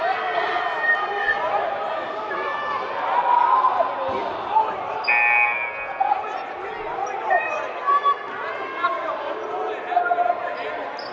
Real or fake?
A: real